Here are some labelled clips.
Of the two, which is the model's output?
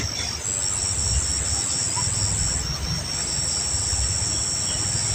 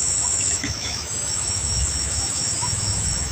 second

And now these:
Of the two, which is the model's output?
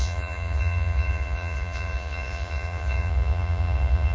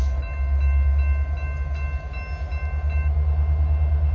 first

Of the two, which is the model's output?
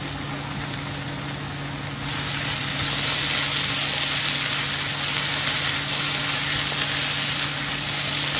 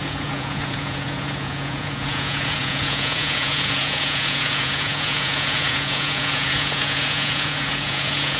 second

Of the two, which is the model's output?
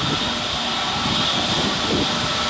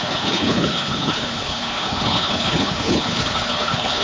second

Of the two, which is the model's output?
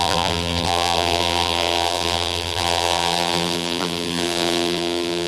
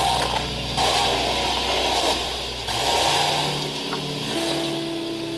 first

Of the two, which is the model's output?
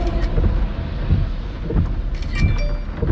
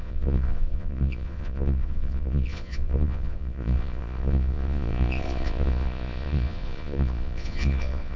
second